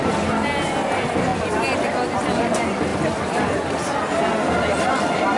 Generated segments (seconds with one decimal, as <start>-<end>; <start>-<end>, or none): none